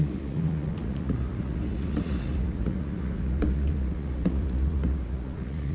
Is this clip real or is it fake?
fake